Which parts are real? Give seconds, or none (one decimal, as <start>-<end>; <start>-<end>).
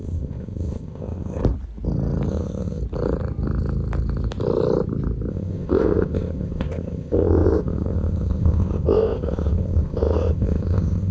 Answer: 1.4-2.3; 2.8-5.3